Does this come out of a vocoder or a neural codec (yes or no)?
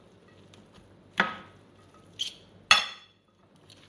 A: no